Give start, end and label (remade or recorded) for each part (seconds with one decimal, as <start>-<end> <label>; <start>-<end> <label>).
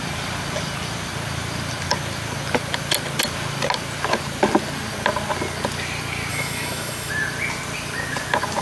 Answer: 0.0-6.3 recorded; 6.3-7.1 remade; 7.1-8.6 recorded